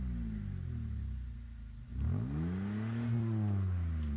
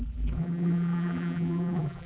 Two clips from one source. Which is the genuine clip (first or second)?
first